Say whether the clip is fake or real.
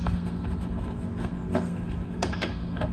fake